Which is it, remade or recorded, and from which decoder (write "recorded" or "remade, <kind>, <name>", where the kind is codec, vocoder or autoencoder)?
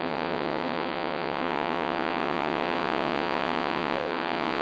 remade, vocoder, WaveNeXt